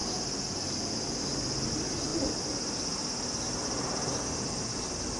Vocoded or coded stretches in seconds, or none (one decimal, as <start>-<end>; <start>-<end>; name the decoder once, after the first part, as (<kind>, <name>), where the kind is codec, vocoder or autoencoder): 2.1-5.2 (vocoder, BigVGAN v2)